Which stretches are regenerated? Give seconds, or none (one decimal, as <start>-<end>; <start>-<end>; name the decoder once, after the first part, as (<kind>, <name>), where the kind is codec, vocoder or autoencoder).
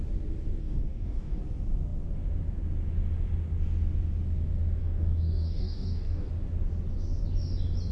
0.6-1.4 (codec, DAC); 4.8-6.3